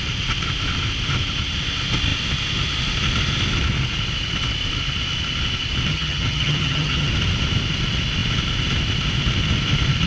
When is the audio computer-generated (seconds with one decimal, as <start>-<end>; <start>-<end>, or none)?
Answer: 5.9-7.1

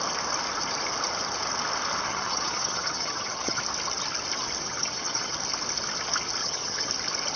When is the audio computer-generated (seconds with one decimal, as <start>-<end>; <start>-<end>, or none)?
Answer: 2.1-3.6; 4.6-5.3; 6.4-6.9

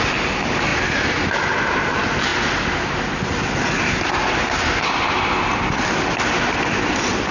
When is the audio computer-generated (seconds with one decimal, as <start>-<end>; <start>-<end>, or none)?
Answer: none

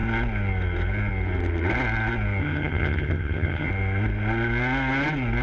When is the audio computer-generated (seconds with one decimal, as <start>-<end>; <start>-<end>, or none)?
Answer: 2.4-3.7

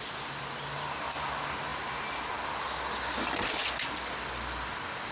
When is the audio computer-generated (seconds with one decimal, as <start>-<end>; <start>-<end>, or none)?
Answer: none

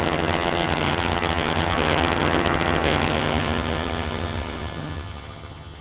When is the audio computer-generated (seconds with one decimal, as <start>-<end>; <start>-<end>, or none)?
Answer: 0.0-5.8

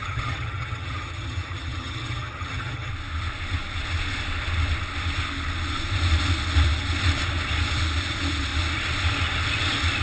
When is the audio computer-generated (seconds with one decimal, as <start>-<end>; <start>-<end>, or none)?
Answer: 0.0-2.9